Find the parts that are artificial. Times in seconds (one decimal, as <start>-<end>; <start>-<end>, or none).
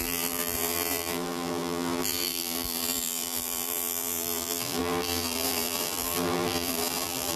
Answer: 0.0-7.4